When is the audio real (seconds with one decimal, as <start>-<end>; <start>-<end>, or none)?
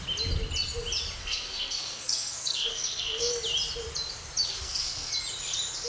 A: 0.0-1.2; 3.3-4.5; 5.1-5.9